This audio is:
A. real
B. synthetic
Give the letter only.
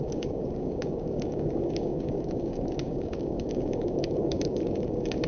B